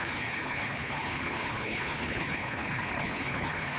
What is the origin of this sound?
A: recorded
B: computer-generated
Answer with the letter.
B